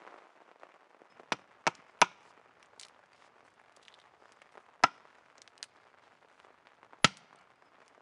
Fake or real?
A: real